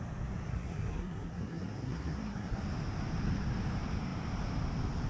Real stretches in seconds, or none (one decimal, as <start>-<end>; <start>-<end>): 0.0-0.5; 2.6-5.1